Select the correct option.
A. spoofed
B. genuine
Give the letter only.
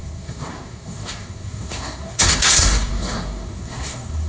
A